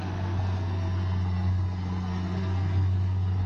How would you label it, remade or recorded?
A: remade